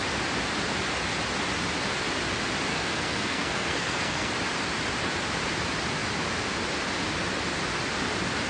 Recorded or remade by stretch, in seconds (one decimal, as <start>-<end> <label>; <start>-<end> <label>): 0.0-2.7 recorded; 2.7-4.3 remade; 4.3-8.5 recorded